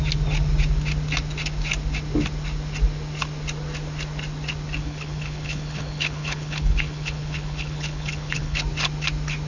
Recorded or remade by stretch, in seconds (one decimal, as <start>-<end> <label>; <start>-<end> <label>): 0.0-4.8 recorded; 4.8-8.6 remade; 8.6-9.5 recorded